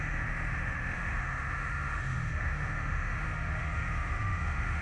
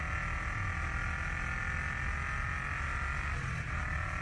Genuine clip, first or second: second